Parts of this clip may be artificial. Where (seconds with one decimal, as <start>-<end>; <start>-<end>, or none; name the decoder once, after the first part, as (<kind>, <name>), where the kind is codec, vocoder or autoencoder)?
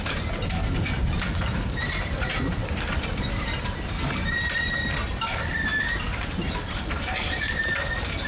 0.0-2.6 (vocoder, BigVGAN v2); 3.2-8.3